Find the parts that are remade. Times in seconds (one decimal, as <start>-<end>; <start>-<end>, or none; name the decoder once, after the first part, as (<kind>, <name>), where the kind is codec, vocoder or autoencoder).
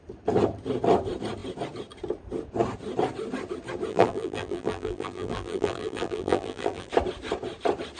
3.9-6.9 (vocoder, BigVGAN v2)